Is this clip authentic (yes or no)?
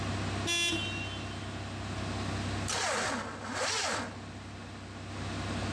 yes